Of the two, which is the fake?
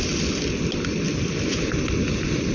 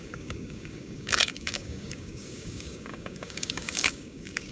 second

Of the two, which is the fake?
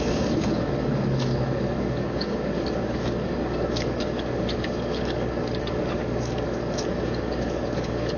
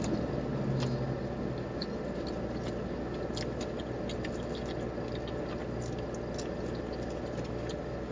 first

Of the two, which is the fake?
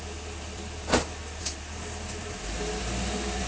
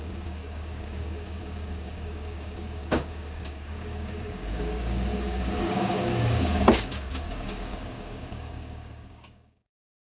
second